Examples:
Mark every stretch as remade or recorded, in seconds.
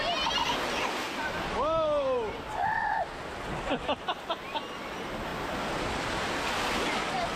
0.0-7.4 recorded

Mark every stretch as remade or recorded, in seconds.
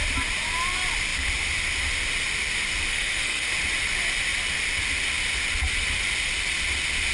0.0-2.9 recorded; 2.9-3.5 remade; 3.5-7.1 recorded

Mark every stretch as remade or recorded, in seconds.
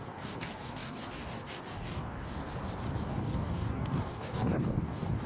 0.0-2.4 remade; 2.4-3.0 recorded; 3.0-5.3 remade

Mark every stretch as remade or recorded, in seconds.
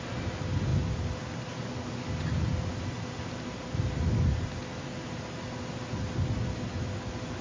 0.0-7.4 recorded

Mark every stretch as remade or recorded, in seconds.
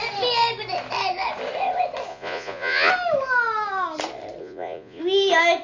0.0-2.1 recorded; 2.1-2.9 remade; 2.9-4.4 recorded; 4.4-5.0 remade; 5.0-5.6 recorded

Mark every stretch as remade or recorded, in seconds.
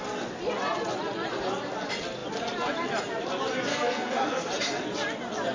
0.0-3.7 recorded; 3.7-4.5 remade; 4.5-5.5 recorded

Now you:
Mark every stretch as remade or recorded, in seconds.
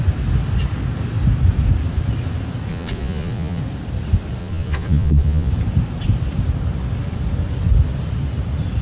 0.0-2.7 recorded; 2.7-3.6 remade; 3.6-4.4 recorded; 4.4-5.5 remade; 5.5-8.8 recorded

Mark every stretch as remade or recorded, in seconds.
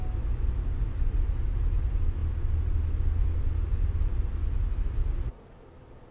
0.0-6.1 recorded